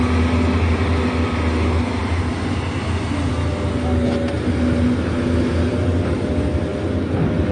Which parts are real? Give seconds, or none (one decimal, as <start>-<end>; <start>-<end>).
0.0-7.5